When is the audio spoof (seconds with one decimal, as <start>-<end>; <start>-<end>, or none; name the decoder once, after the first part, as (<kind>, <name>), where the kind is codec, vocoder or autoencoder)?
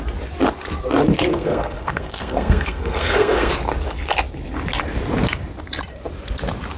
1.3-3.5 (codec, SNAC)